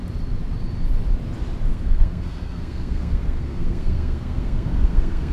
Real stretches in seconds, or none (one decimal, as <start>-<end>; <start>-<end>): 0.0-1.7